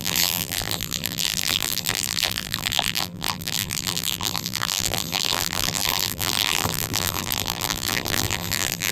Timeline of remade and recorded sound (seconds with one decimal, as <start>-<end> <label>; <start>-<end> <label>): 0.0-8.9 remade